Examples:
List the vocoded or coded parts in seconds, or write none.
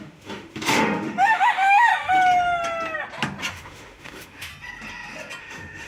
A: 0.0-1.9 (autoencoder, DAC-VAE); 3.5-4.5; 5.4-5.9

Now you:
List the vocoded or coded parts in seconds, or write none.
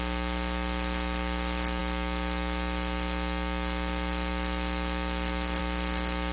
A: none